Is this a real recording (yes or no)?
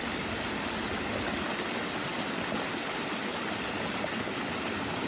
yes